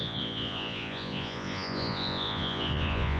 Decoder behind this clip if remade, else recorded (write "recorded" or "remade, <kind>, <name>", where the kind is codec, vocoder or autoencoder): remade, vocoder, Vocos